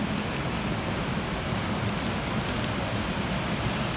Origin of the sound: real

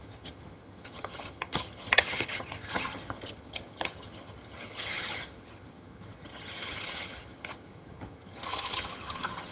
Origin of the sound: fake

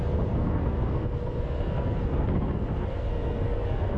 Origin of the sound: fake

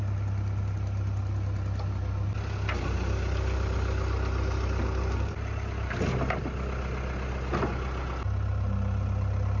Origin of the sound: real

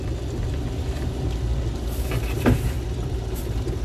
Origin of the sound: real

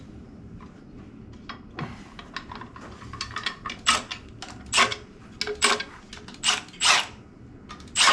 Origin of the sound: real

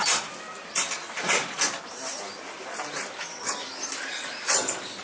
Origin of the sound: real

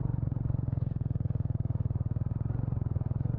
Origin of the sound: fake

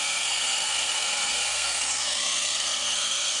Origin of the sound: fake